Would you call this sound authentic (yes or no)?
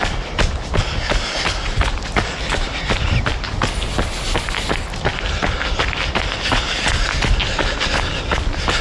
yes